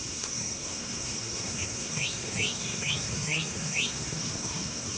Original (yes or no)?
no